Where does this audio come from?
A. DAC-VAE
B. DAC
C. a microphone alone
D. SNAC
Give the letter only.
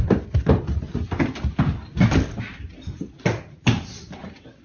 C